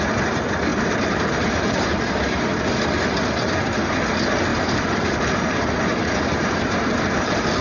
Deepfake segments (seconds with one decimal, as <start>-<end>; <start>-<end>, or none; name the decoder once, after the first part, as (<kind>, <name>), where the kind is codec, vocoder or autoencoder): 0.7-1.9 (vocoder, BigVGAN v2); 4.5-7.6